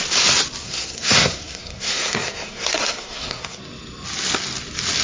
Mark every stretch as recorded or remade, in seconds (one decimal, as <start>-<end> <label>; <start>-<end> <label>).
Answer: 0.0-0.6 recorded; 0.6-3.6 remade; 3.6-5.0 recorded